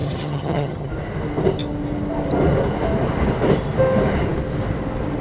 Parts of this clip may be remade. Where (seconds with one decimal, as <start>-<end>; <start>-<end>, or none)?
0.0-0.9